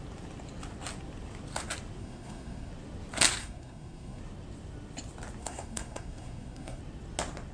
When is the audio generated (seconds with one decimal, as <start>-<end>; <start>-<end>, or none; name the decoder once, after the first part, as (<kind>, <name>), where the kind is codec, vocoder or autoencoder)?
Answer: 2.0-2.7 (codec, SNAC); 3.4-4.2; 5.4-6.8